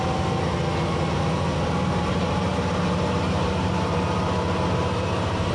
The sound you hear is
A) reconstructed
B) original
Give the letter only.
B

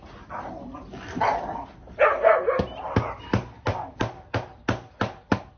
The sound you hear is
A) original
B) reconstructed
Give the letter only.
A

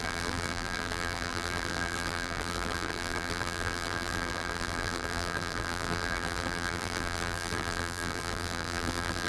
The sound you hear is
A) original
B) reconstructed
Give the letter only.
B